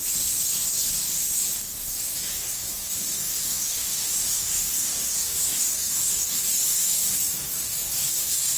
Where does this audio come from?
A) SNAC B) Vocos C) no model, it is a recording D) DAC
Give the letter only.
D